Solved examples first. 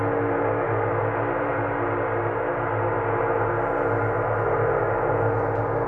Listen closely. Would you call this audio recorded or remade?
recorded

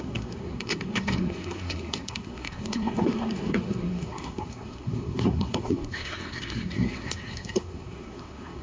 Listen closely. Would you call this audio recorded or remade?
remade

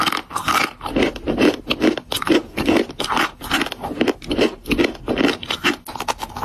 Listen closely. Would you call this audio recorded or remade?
recorded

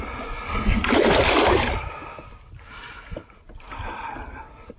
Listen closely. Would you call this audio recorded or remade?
recorded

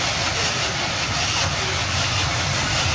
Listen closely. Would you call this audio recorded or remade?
recorded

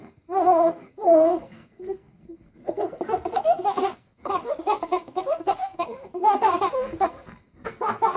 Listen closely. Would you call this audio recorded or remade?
remade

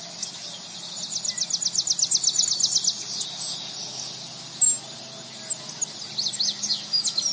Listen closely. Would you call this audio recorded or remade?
recorded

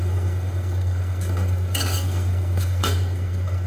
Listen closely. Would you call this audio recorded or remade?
remade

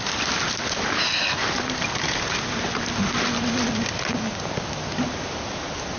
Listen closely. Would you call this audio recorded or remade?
recorded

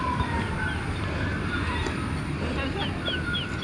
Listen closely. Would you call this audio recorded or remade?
recorded